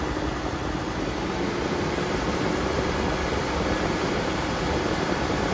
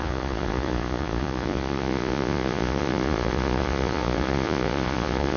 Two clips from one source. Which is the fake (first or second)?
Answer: second